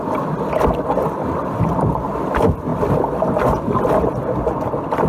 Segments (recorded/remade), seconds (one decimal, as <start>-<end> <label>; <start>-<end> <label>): 0.0-5.1 recorded